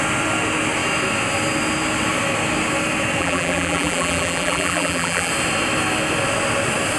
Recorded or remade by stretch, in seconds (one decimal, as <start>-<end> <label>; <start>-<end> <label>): 0.0-3.2 recorded; 3.2-5.3 remade; 5.3-7.0 recorded